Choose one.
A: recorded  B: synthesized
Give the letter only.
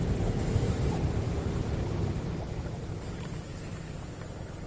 A